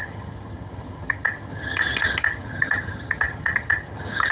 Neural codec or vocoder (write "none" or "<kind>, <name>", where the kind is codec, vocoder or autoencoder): vocoder, HiFi-GAN